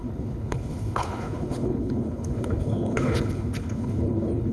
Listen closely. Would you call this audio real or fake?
fake